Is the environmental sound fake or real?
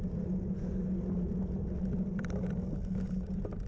real